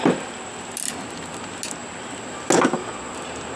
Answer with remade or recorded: recorded